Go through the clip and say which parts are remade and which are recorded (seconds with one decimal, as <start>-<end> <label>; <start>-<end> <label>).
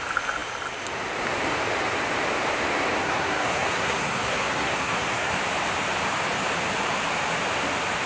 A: 0.0-3.0 recorded; 3.0-5.3 remade; 5.3-8.1 recorded